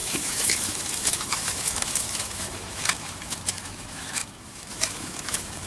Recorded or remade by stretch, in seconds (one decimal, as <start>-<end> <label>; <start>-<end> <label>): 0.0-5.7 remade

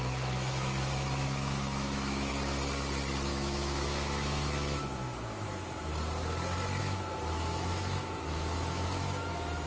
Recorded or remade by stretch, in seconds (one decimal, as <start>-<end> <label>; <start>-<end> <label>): 0.0-2.3 remade; 2.3-3.3 recorded; 3.3-5.9 remade; 5.9-6.8 recorded; 6.8-9.7 remade